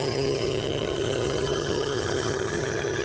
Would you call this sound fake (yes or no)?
yes